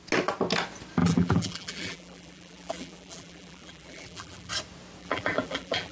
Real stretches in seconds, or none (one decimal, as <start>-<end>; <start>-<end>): 0.0-1.0; 4.5-5.0